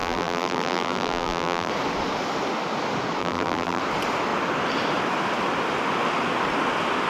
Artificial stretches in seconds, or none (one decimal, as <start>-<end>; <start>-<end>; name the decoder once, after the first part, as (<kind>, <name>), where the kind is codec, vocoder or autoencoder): 0.0-1.7 (vocoder, BigVGAN v2); 3.2-3.8